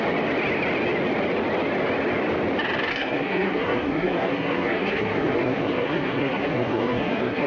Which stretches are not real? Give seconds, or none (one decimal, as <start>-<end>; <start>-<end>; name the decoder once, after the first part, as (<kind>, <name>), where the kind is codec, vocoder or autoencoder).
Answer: 2.9-7.5 (codec, SNAC)